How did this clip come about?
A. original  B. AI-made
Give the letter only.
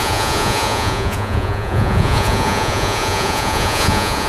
B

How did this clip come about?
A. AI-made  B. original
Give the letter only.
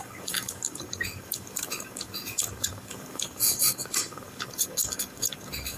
A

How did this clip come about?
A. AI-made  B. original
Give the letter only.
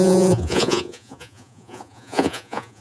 A